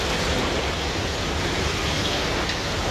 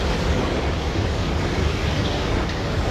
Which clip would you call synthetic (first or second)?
second